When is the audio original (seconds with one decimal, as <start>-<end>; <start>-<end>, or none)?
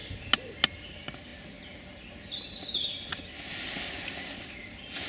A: 0.0-5.1